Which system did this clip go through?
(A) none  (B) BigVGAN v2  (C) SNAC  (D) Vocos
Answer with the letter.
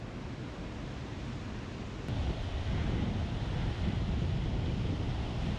A